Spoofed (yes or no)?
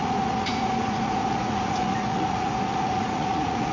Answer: yes